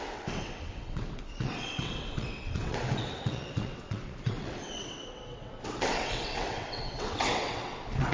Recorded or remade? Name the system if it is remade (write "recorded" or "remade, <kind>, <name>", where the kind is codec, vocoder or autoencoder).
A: remade, vocoder, WaveNeXt